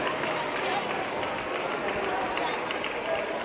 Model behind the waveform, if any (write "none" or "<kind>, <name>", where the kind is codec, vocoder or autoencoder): none